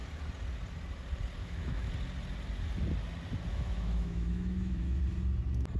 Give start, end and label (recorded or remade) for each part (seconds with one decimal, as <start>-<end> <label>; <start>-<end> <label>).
0.0-1.4 recorded; 1.4-1.9 remade; 1.9-3.5 recorded; 3.5-5.0 remade; 5.0-5.8 recorded

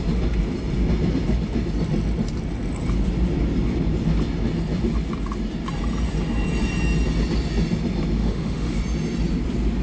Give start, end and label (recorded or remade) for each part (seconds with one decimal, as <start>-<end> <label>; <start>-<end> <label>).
0.0-8.2 recorded; 8.2-8.8 remade; 8.8-9.8 recorded

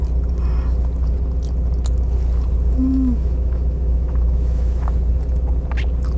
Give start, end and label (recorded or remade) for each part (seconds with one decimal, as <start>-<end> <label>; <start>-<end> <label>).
0.0-2.9 recorded; 2.9-4.9 remade; 4.9-6.2 recorded

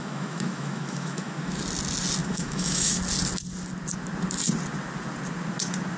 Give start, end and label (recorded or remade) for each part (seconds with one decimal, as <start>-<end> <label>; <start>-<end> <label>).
0.0-1.6 remade; 1.6-2.2 recorded; 2.2-3.0 remade; 3.0-6.0 recorded

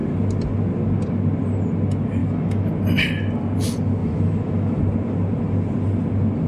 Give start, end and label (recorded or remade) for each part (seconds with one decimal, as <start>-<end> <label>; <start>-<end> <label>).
0.0-2.2 recorded; 2.2-2.7 remade; 2.7-4.0 recorded; 4.0-4.8 remade; 4.8-6.5 recorded